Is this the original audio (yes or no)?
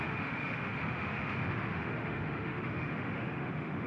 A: no